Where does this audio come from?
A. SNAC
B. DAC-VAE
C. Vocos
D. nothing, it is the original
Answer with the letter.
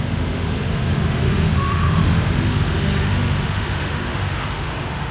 B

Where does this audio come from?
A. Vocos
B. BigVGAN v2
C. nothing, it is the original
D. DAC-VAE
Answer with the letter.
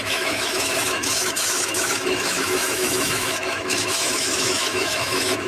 D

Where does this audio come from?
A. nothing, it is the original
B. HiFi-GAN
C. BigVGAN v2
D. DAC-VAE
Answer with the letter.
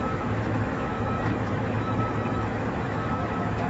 D